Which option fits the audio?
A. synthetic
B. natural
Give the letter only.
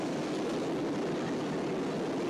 B